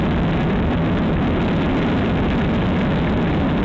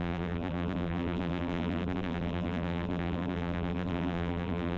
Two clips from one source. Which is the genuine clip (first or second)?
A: first